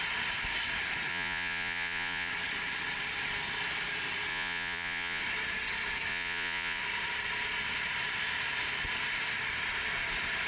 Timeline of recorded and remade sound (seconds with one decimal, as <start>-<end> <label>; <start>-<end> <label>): 0.0-1.1 recorded; 1.1-2.3 remade; 2.3-4.3 recorded; 4.3-5.2 remade; 5.2-6.1 recorded; 6.1-6.8 remade; 6.8-10.5 recorded